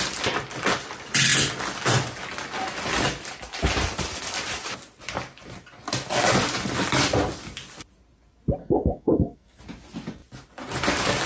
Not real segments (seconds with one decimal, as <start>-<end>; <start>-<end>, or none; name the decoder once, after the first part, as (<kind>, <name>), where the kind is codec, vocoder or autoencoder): 8.6-9.6 (codec, SNAC)

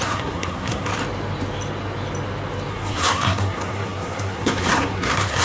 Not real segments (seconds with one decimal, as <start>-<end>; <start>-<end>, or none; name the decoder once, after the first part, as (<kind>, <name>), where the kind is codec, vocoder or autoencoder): 0.0-0.9 (codec, SNAC); 2.7-5.4